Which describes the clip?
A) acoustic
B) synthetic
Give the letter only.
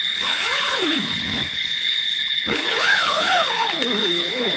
B